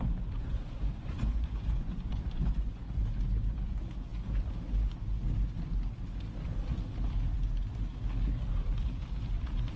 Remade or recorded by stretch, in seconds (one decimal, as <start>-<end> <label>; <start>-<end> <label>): 0.0-0.4 recorded; 0.4-3.0 remade; 3.0-9.8 recorded